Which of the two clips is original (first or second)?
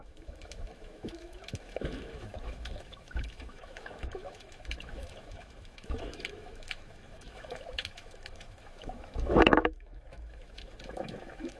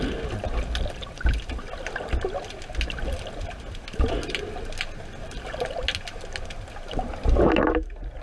second